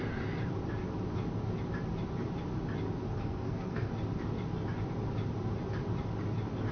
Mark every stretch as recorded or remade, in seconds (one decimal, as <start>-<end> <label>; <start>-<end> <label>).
0.0-3.1 recorded; 3.1-3.9 remade; 3.9-6.7 recorded